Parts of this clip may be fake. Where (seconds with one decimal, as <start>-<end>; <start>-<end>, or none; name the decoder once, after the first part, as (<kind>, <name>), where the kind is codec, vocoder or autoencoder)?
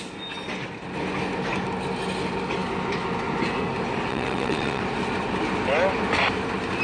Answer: 4.1-4.8 (vocoder, WaveNeXt)